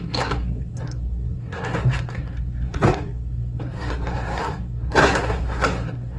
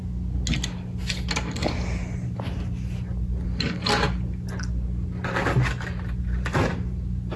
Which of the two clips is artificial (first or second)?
first